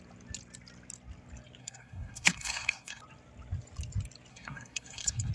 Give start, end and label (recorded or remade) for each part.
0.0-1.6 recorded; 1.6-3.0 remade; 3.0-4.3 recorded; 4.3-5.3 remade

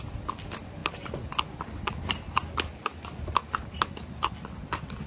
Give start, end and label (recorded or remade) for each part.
0.0-5.1 recorded